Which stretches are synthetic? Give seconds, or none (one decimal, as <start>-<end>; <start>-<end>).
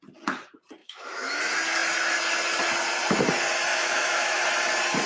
0.8-1.4; 3.7-4.4